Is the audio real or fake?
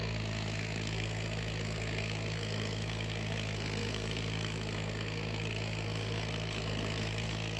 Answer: fake